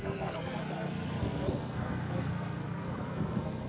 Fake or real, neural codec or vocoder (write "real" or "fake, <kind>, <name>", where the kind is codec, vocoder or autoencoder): fake, codec, SNAC